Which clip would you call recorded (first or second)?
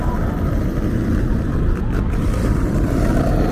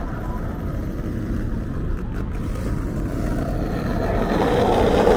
second